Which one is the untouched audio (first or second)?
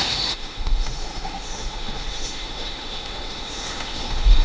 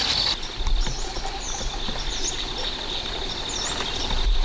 second